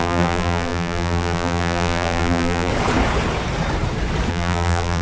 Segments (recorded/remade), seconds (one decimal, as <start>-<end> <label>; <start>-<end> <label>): 0.0-2.7 remade; 2.7-4.3 recorded; 4.3-5.0 remade

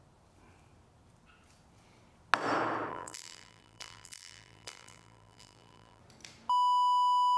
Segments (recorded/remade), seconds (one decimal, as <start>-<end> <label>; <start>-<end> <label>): 0.0-2.9 recorded; 2.9-6.0 remade; 6.0-7.4 recorded

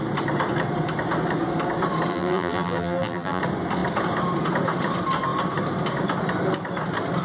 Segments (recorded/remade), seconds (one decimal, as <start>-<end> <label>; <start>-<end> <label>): 0.0-2.1 recorded; 2.1-3.4 remade; 3.4-7.2 recorded

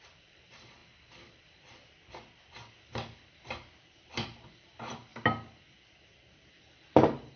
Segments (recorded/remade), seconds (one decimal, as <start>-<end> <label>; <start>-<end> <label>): 0.0-0.8 remade; 0.8-3.7 recorded; 3.7-5.1 remade; 5.1-6.1 recorded; 6.1-7.4 remade

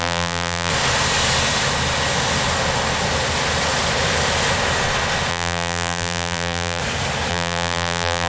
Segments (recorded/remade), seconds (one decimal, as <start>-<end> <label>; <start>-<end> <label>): 0.0-0.7 remade; 0.7-5.3 recorded; 5.3-6.8 remade; 6.8-7.3 recorded; 7.3-8.3 remade

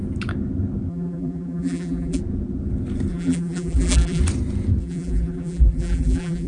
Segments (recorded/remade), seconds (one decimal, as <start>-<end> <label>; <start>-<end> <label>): 0.0-0.9 recorded; 0.9-2.2 remade; 2.2-3.1 recorded; 3.1-4.2 remade; 4.2-4.8 recorded; 4.8-6.5 remade

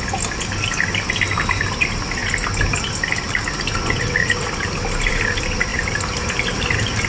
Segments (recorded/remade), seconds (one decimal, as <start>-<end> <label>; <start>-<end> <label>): 0.0-5.7 recorded; 5.7-7.1 remade